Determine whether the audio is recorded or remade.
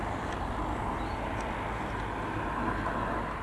recorded